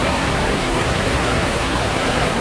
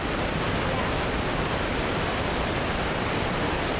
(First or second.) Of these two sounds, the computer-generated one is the first